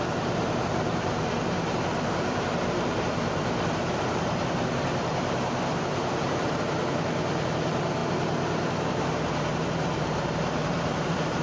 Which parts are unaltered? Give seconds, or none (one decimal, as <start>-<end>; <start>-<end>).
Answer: 8.0-8.9